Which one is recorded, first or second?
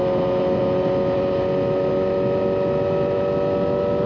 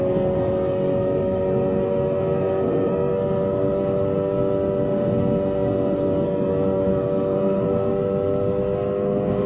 first